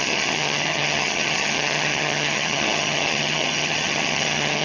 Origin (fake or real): fake